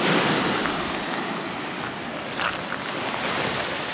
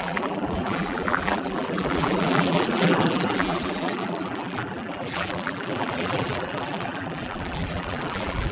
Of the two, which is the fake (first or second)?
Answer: second